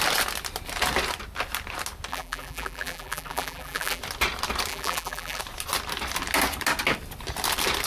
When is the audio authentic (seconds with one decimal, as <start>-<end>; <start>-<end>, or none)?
0.0-2.1; 4.0-4.7; 5.4-7.9